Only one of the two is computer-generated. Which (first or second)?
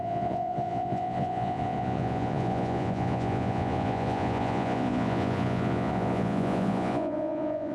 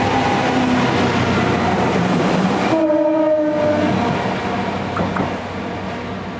first